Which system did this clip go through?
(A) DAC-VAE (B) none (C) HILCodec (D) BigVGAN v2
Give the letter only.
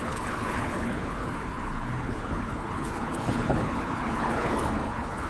C